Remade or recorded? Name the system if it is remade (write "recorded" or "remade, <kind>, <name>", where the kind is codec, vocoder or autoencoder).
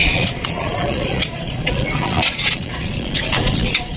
remade, vocoder, Vocos